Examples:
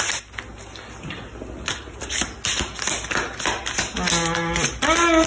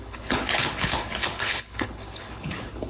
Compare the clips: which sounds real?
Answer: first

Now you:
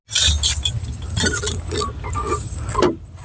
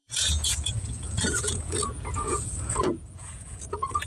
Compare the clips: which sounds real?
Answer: first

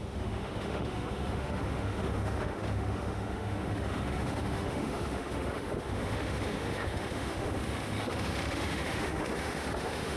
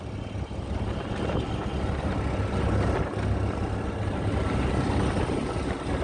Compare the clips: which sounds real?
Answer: second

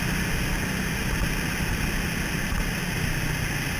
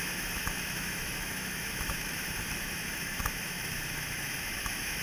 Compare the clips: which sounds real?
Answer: first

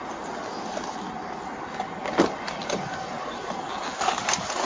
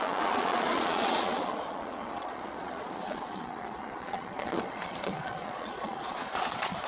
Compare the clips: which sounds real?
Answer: first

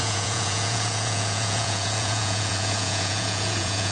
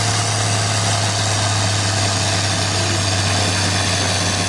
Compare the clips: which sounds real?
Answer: second